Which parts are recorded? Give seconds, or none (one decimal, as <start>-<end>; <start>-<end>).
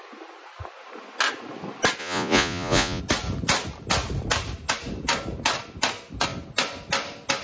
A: 0.0-2.0; 3.0-7.4